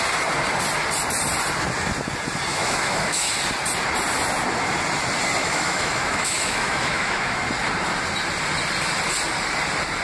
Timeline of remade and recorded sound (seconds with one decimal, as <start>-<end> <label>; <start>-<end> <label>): 0.0-2.5 recorded; 2.5-3.3 remade; 3.3-5.4 recorded; 5.4-7.4 remade; 7.4-10.0 recorded